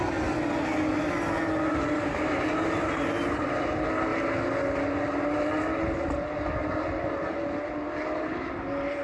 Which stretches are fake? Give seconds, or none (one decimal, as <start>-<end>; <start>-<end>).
none